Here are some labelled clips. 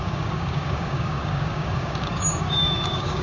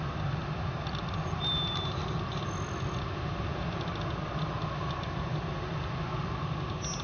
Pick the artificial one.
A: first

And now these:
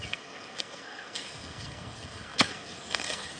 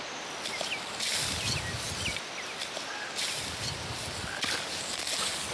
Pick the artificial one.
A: first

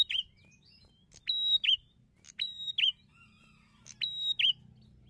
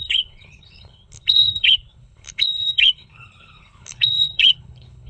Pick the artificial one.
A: second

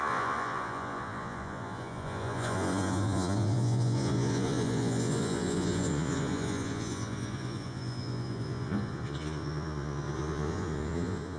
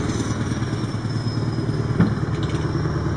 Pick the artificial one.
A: first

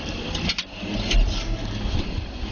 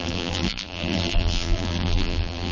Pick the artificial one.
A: second